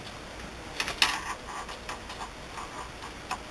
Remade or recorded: recorded